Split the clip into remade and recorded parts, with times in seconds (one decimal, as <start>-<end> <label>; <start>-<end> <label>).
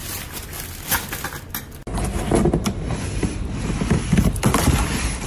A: 0.0-5.3 recorded